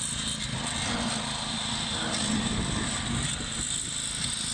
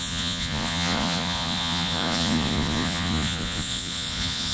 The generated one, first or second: second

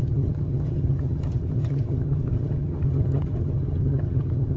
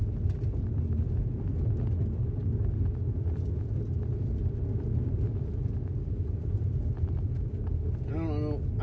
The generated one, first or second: first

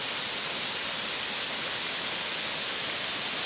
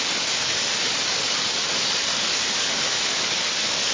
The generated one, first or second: second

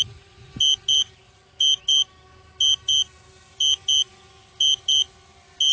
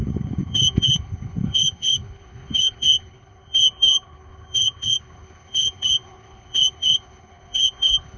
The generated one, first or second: second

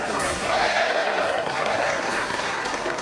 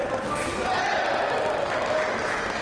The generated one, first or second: first